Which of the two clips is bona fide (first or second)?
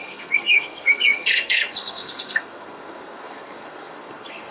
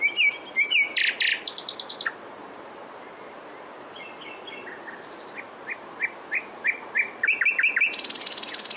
second